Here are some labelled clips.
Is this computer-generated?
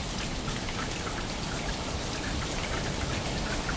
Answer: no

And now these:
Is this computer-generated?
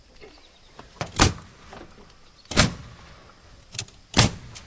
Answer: no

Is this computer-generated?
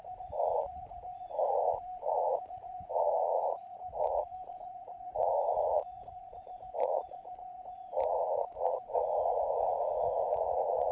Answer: yes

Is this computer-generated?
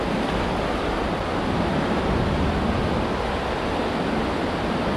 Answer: no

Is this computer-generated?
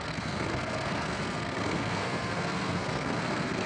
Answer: yes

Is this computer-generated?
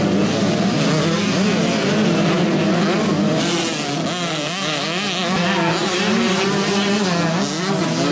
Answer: no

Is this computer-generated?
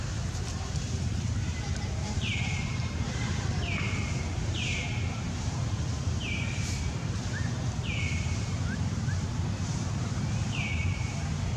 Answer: yes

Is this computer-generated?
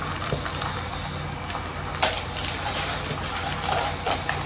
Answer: no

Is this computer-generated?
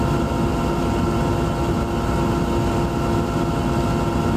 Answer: no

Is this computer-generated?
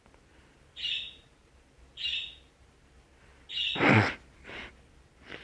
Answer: no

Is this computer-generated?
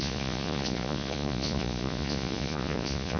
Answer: yes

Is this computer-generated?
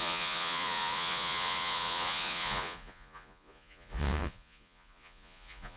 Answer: yes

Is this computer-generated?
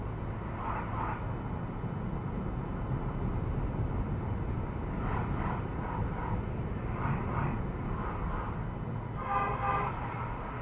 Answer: no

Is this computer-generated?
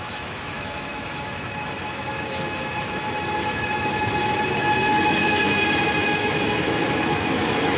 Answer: yes